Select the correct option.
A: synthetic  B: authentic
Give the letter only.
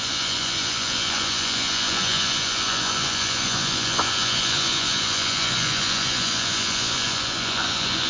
A